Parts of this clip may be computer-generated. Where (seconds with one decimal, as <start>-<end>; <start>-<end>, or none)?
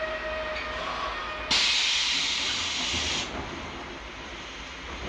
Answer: none